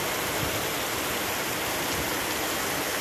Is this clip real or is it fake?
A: real